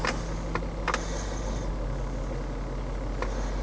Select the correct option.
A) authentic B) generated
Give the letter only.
A